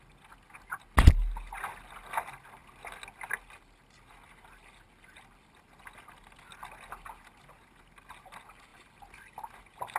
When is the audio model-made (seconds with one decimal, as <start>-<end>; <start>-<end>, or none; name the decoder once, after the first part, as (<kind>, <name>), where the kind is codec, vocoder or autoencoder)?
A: none